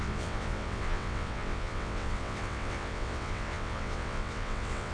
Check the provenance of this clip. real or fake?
fake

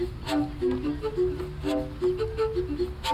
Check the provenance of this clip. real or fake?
real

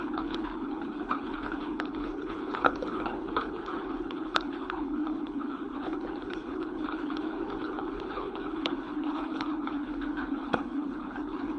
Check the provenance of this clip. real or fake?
fake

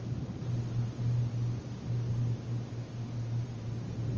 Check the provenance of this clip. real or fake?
real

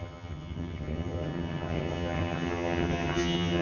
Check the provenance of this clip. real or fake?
fake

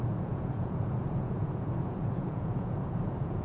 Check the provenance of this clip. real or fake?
fake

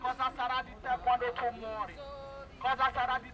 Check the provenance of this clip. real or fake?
real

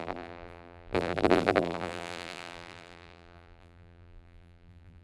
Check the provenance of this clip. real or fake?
fake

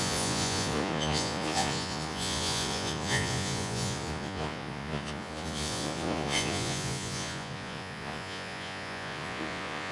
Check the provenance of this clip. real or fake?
fake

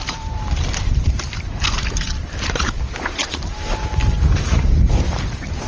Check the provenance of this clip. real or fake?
fake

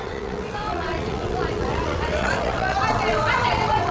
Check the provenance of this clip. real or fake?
fake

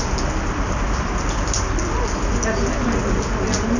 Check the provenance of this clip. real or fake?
real